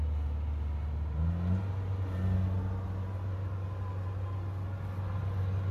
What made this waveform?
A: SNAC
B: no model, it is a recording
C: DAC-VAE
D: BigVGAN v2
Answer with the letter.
B